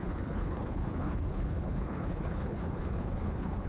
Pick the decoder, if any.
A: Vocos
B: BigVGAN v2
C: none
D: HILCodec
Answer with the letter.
D